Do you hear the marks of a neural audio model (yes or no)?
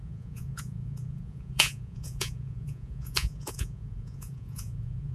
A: yes